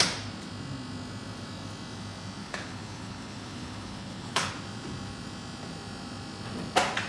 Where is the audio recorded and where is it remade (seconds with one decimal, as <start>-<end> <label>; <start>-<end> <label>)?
0.0-2.4 recorded; 2.4-4.5 remade; 4.5-7.1 recorded